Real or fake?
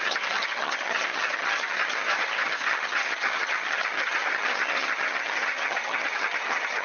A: fake